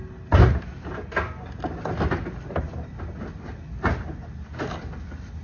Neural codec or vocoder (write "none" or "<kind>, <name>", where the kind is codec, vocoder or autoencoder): none